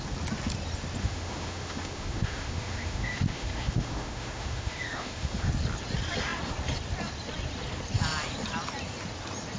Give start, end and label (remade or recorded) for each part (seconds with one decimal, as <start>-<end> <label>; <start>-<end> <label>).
0.0-1.0 recorded; 1.0-5.5 remade; 5.5-9.6 recorded